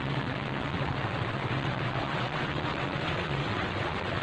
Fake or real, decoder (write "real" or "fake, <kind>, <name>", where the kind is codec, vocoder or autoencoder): fake, vocoder, WaveNeXt